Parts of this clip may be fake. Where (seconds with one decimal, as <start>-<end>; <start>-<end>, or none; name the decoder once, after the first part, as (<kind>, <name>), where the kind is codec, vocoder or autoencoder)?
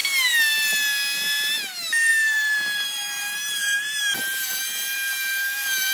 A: 2.1-5.9 (vocoder, BigVGAN v2)